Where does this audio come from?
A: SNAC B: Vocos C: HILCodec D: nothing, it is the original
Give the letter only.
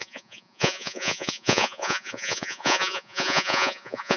B